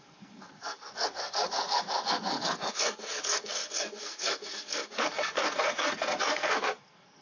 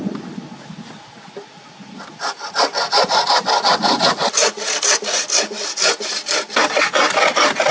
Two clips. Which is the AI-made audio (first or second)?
first